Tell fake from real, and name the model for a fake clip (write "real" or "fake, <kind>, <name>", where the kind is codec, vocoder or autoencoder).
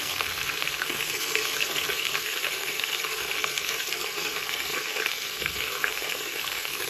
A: fake, codec, SNAC